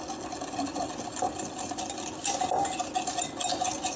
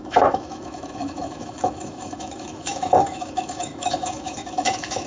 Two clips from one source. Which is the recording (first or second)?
first